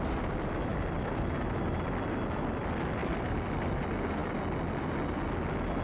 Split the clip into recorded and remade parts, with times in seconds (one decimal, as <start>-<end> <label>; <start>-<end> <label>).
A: 0.0-5.8 recorded